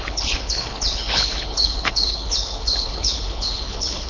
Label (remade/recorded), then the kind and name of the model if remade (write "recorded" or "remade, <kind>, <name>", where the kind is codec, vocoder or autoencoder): remade, codec, HILCodec